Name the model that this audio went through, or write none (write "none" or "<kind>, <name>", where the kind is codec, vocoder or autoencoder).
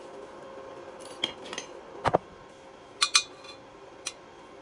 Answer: none